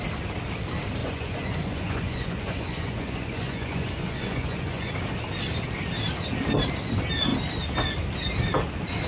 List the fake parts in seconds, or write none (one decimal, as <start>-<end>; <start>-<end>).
1.0-4.9